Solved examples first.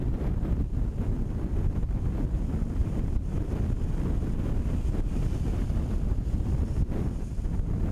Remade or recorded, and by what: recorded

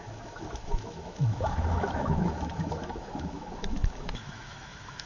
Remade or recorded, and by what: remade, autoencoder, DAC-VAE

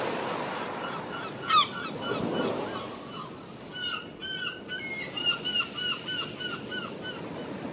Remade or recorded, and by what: recorded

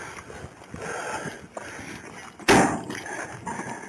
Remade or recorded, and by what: recorded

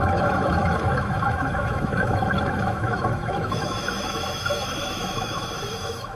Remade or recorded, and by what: remade, autoencoder, DAC-VAE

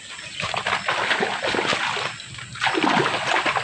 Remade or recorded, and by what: recorded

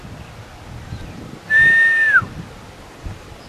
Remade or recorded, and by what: recorded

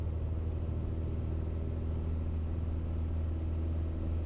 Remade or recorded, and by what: recorded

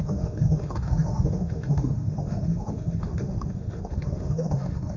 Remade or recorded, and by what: remade, autoencoder, DAC-VAE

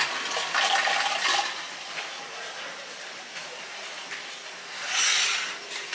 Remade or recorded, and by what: recorded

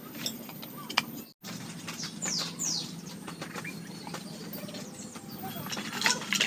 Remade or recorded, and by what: recorded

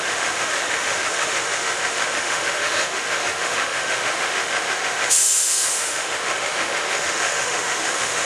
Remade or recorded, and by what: remade, autoencoder, DAC-VAE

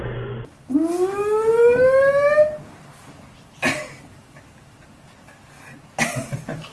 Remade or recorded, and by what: recorded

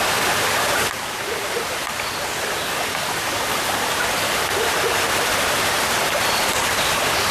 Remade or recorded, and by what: recorded